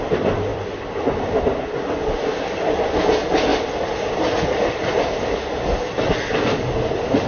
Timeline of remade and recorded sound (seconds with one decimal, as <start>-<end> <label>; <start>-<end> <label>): 0.0-7.3 recorded